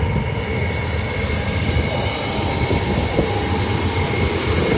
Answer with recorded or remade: recorded